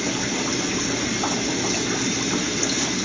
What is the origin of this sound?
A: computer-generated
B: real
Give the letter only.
B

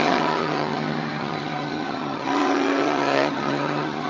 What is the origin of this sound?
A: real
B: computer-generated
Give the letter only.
B